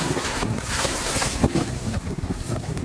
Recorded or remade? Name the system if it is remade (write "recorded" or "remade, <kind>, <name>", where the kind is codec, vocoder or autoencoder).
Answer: remade, codec, SNAC